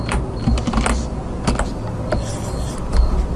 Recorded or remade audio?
recorded